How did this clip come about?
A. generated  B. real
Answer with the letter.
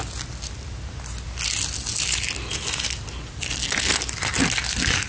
B